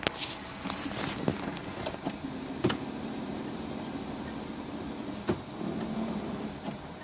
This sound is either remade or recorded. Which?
recorded